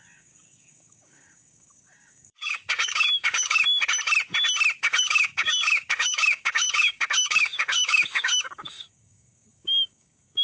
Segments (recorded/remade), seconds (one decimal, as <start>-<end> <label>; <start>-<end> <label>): 0.0-3.8 remade; 3.8-4.8 recorded; 4.8-10.4 remade